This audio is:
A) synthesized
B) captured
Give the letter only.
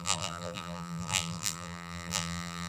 A